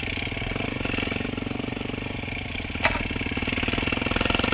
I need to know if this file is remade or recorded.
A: recorded